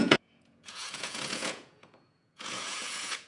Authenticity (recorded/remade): remade